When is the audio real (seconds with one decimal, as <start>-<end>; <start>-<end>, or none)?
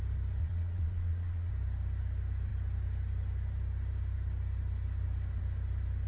0.0-0.4; 1.5-6.1